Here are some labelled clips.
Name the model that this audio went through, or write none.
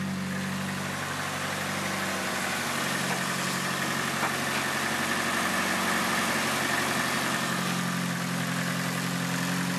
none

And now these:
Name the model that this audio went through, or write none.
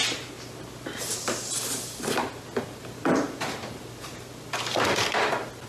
none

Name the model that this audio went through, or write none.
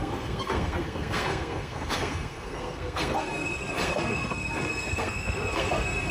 codec, SNAC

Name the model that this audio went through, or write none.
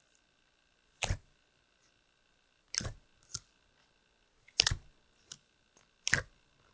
none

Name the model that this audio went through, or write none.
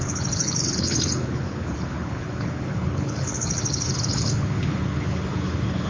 codec, HILCodec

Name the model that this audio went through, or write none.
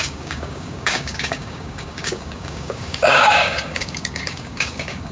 codec, DAC